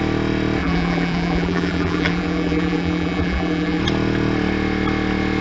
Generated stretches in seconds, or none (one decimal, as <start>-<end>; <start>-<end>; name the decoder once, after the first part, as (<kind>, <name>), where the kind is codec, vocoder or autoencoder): 0.6-3.8 (vocoder, BigVGAN v2)